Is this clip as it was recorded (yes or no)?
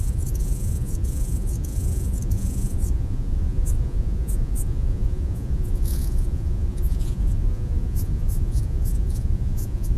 no